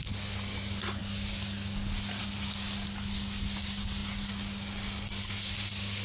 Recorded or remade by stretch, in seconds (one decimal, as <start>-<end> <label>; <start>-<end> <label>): 0.0-6.0 recorded